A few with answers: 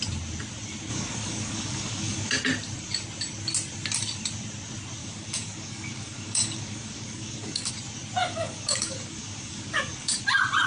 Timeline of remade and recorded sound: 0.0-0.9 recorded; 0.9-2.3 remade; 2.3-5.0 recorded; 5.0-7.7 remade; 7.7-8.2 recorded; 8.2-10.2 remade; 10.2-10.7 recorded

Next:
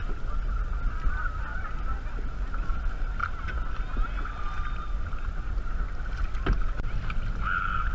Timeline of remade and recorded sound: 0.0-7.9 recorded